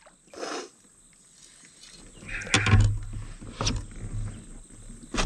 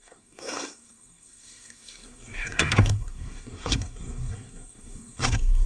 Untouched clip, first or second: first